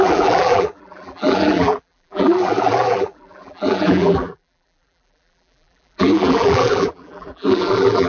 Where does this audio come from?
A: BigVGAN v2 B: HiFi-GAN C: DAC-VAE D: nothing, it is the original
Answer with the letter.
A